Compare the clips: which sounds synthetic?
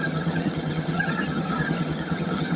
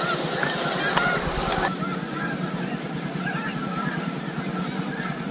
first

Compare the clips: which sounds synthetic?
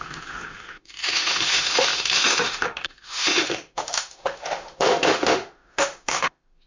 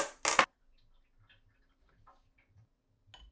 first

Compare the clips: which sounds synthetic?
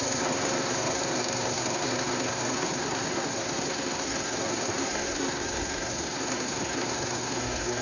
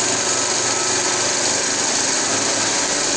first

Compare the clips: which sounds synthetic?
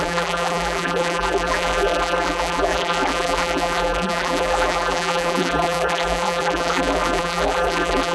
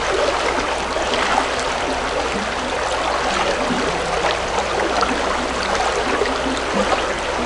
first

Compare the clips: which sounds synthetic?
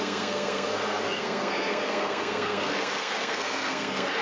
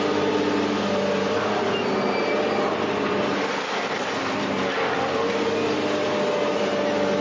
first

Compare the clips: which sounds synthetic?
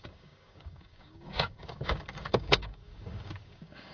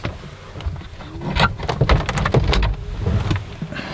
first